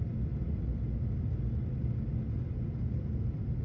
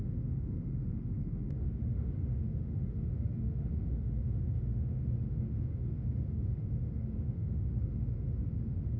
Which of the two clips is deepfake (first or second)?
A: second